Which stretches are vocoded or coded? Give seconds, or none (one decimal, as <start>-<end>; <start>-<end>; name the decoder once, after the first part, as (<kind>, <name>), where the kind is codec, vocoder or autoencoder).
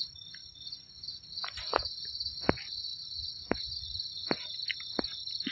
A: 0.4-1.2 (vocoder, Vocos)